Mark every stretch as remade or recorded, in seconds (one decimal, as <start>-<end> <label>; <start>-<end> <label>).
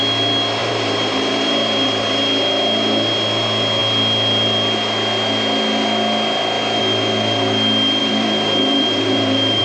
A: 0.0-0.6 recorded; 0.6-2.2 remade; 2.2-8.0 recorded; 8.0-9.6 remade